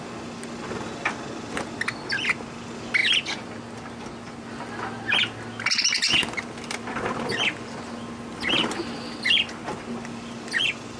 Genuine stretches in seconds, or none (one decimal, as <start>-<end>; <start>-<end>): 0.0-11.0